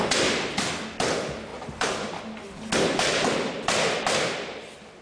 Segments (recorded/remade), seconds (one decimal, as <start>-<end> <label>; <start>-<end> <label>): 0.0-5.0 recorded